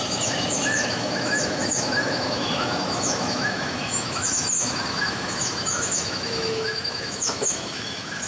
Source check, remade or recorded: remade